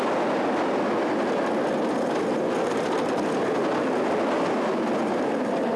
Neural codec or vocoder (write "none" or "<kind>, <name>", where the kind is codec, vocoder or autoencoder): none